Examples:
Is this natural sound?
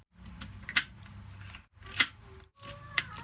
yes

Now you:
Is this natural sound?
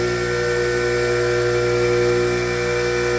yes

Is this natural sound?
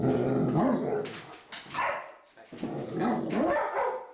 yes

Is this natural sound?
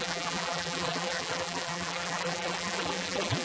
no